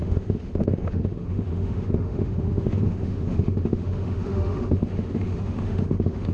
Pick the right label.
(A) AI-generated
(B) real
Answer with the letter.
A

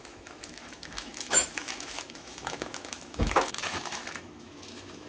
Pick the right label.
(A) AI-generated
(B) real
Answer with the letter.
A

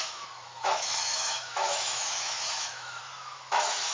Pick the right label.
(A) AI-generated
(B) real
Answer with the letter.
A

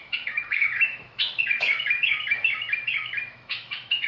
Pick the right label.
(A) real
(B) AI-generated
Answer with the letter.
B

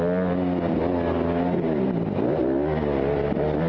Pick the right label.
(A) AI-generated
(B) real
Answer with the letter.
B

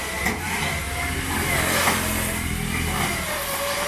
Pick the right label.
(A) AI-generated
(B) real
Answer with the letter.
B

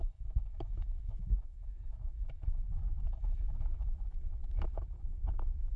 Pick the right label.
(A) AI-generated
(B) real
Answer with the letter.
A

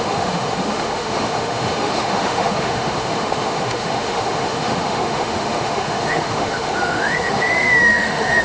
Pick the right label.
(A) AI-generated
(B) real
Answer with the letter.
A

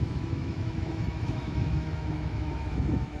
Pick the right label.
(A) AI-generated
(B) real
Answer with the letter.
A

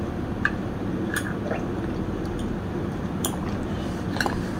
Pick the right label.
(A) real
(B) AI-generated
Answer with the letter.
A